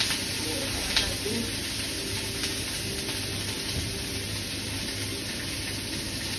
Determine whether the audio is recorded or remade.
recorded